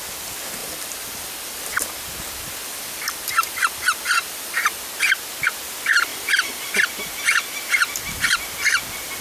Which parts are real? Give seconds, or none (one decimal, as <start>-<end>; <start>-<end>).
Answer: 0.0-0.6; 1.7-2.6; 4.8-6.1; 6.8-9.2